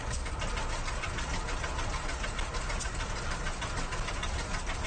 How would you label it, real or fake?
real